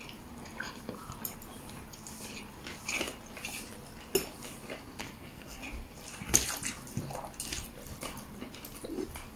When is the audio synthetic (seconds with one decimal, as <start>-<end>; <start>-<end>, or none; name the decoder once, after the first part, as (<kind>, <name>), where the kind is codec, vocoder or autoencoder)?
5.0-5.6 (codec, SNAC)